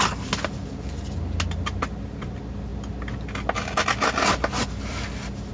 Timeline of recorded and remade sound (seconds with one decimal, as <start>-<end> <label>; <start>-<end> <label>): 0.0-5.5 recorded